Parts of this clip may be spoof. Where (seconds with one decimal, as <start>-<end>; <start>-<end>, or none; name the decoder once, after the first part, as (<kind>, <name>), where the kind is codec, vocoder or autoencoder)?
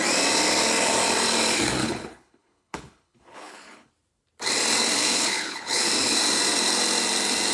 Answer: 1.8-3.9 (codec, HILCodec); 5.0-5.9